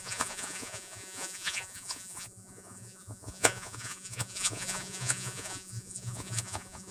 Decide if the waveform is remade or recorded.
remade